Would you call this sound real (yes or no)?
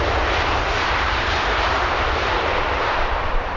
no